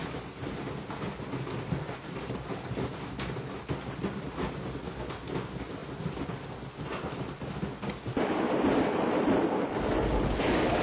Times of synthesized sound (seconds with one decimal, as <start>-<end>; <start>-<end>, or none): none